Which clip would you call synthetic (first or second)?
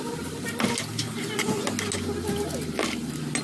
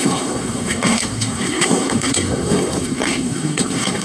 second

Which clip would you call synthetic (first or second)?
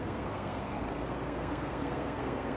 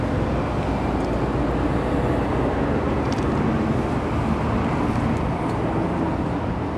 first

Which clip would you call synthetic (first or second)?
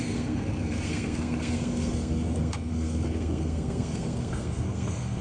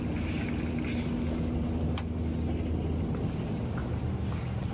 first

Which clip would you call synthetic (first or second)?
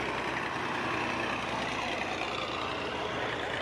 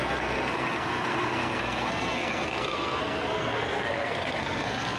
second